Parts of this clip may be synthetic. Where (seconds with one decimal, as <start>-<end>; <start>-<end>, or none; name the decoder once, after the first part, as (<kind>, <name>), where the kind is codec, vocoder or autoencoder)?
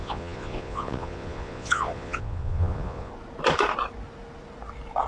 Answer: 0.0-3.1 (vocoder, Vocos)